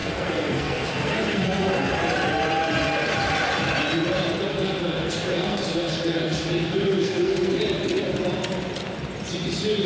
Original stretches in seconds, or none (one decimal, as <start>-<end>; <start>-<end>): 1.9-4.5; 7.6-9.9